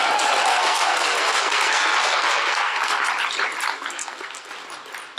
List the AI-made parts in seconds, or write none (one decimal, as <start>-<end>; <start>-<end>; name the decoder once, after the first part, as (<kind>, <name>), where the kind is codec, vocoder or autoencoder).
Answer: 0.5-3.0 (codec, SNAC); 3.7-4.5